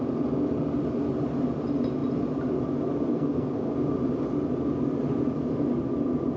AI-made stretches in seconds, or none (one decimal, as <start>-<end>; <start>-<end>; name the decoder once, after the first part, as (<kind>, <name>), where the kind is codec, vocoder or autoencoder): 3.1-3.7 (codec, SNAC)